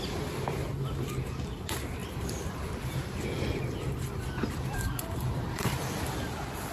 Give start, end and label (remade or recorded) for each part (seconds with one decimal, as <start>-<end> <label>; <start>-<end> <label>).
0.0-2.0 recorded; 2.0-6.0 remade; 6.0-6.7 recorded